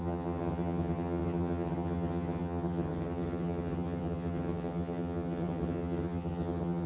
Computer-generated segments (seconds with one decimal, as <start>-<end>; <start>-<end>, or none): 0.0-6.9